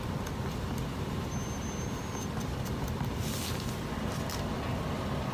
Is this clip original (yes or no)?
yes